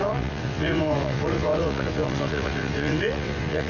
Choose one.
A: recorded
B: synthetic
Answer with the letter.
B